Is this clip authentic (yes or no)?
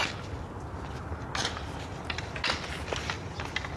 yes